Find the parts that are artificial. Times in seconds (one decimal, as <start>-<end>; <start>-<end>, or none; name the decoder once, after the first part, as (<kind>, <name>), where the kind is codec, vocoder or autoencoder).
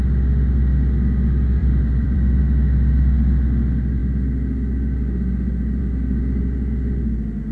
1.6-2.4 (vocoder, BigVGAN v2)